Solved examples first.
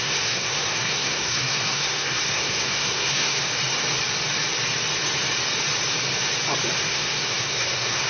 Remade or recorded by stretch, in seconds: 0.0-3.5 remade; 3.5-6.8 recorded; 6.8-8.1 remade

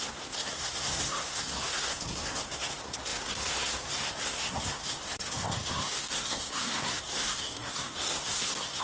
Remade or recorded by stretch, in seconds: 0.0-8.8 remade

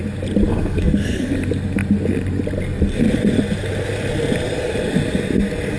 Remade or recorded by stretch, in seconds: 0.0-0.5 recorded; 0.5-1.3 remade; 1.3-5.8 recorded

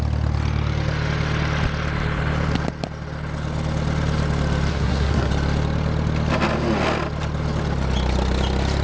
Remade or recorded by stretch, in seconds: 0.0-4.7 recorded; 4.7-5.3 remade; 5.3-8.8 recorded